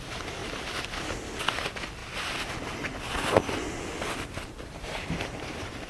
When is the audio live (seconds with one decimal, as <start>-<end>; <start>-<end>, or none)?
0.0-5.9